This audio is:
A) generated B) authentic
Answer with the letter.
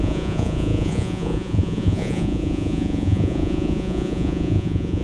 A